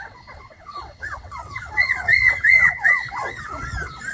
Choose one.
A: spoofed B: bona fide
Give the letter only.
A